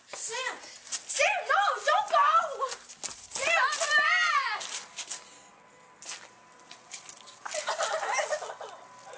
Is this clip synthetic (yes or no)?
no